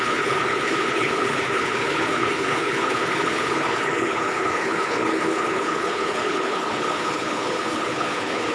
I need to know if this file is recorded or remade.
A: remade